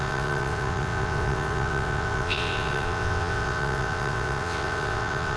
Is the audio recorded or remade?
remade